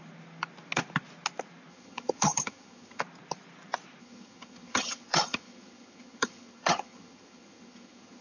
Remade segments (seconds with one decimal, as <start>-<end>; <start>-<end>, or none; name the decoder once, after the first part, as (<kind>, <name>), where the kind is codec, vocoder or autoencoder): 1.7-3.0 (vocoder, HiFi-GAN); 4.0-8.2